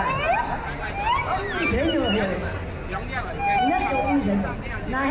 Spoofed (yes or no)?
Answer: no